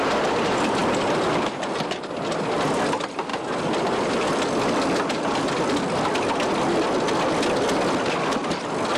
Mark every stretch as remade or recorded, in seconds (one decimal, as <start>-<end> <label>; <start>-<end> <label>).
0.0-9.0 recorded